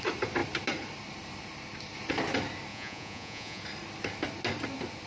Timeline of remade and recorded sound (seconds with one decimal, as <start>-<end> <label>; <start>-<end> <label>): 0.0-2.7 recorded; 2.7-3.6 remade; 3.6-5.1 recorded